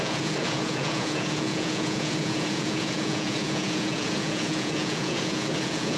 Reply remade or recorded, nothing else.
remade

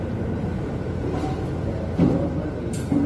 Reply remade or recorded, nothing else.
recorded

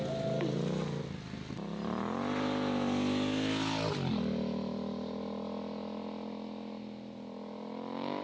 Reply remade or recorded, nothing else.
recorded